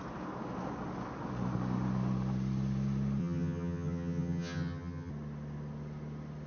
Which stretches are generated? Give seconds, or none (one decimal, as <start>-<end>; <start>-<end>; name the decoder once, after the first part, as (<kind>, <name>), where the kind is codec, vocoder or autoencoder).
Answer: 3.2-5.1 (vocoder, HiFi-GAN)

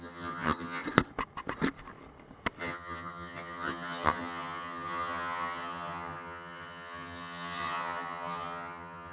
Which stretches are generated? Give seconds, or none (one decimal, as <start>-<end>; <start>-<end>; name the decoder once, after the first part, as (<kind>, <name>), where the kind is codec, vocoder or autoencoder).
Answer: 0.0-0.8 (vocoder, HiFi-GAN); 2.6-9.1

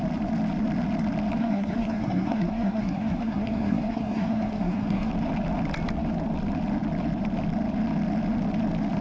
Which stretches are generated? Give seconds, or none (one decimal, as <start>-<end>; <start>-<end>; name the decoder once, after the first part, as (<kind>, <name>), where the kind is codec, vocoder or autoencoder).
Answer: 1.4-5.1 (codec, SNAC)

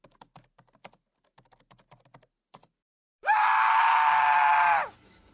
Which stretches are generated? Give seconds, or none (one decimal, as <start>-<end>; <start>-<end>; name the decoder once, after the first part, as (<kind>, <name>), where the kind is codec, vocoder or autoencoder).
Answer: 2.6-3.9 (vocoder, BigVGAN v2); 4.5-5.3